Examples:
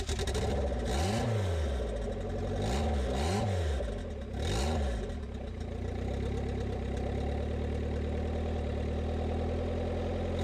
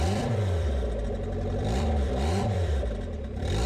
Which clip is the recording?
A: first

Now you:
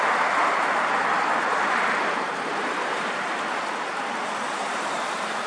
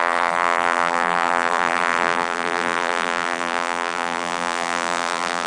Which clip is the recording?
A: first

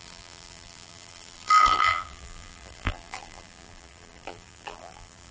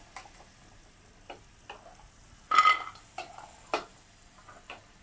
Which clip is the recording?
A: second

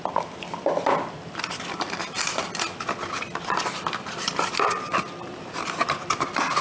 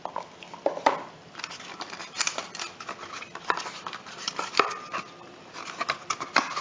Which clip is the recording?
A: second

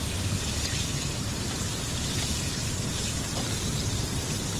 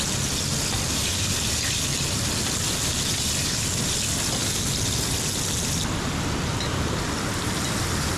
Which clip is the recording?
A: second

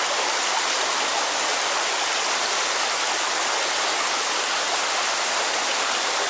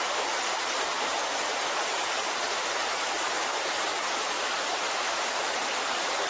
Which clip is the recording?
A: first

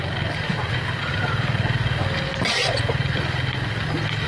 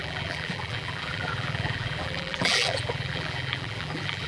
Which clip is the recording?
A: first